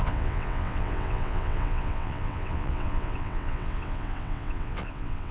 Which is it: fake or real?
fake